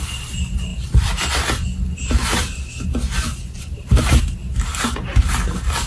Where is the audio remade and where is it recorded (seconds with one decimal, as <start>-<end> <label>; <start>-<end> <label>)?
0.0-5.9 recorded